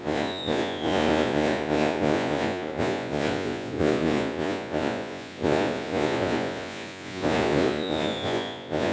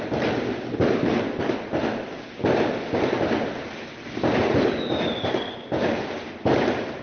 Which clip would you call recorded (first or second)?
second